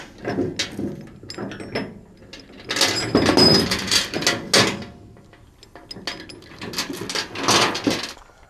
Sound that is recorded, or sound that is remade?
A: recorded